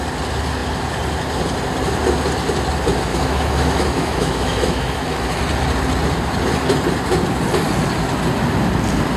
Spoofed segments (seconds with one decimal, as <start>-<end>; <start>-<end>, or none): 3.1-5.4

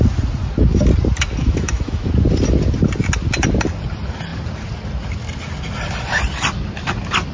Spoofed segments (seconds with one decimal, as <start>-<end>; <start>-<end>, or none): 1.4-2.1